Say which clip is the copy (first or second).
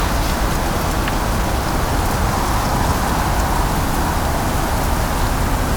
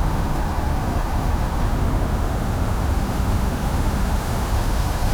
second